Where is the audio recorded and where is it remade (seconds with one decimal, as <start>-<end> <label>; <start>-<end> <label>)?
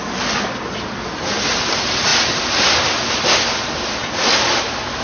0.0-5.0 recorded